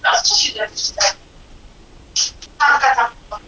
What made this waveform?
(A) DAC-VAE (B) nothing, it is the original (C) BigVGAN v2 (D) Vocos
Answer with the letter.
D